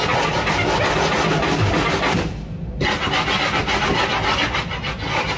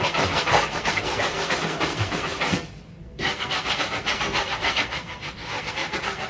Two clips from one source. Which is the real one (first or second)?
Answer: first